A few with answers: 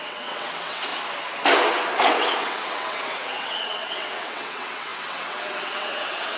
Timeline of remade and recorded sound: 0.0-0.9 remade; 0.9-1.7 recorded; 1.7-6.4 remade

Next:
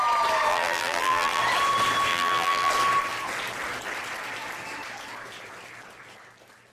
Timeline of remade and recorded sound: 0.0-0.5 recorded; 0.5-1.4 remade; 1.4-2.1 recorded; 2.1-2.7 remade; 2.7-6.7 recorded

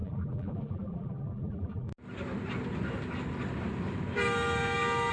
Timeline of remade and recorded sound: 0.0-1.9 remade; 1.9-5.1 recorded

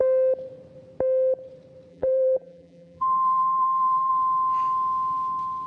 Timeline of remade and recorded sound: 0.0-1.9 recorded; 1.9-4.1 remade; 4.1-5.7 recorded

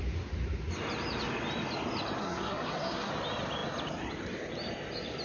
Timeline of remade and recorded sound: 0.0-2.2 recorded; 2.2-3.1 remade; 3.1-5.2 recorded

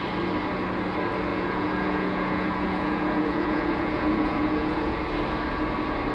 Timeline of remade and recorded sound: 0.0-1.3 recorded; 1.3-5.0 remade; 5.0-6.1 recorded

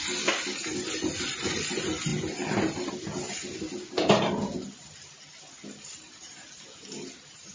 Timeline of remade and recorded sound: 0.0-7.5 recorded